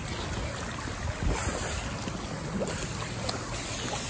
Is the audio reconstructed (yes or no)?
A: no